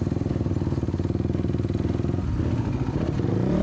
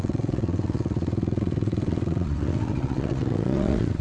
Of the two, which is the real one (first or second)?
first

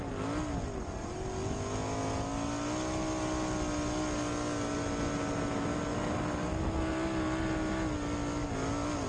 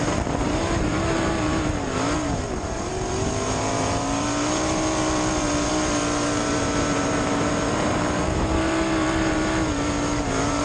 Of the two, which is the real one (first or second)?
first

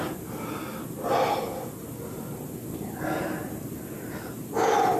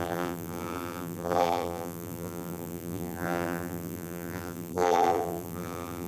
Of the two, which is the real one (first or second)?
first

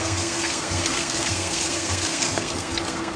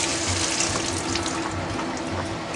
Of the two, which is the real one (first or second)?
second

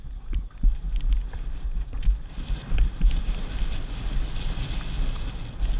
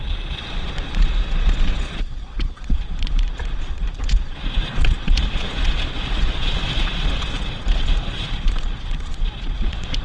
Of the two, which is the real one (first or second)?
first